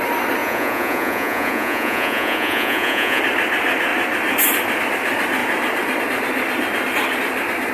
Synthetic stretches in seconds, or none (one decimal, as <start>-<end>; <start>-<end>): 0.4-3.2